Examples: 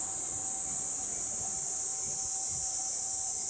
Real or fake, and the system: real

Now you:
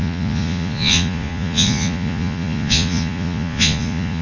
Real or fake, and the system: fake, vocoder, Vocos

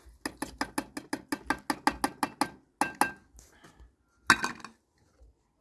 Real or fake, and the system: real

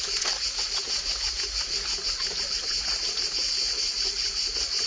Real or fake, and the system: fake, vocoder, Vocos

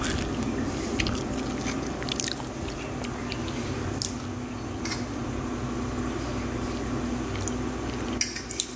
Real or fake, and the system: real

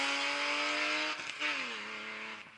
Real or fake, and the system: real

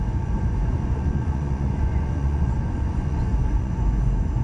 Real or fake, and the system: fake, vocoder, Vocos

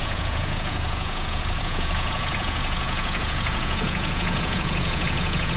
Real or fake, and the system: fake, vocoder, Vocos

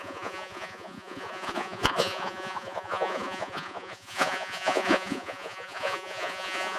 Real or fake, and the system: fake, vocoder, Vocos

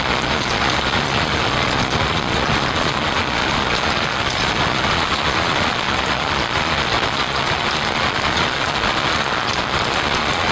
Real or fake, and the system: fake, vocoder, Vocos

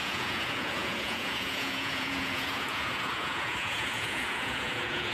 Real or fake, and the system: fake, vocoder, Vocos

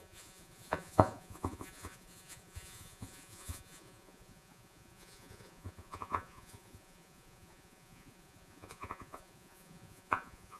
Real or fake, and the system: fake, vocoder, Vocos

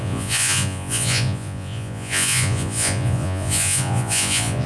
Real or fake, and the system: fake, vocoder, Vocos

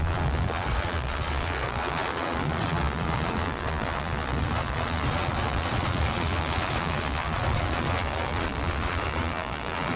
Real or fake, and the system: fake, vocoder, Vocos